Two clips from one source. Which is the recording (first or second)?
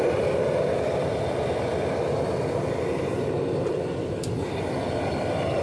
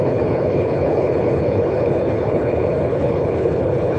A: first